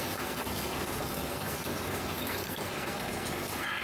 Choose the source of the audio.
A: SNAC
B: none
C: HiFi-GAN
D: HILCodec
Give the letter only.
A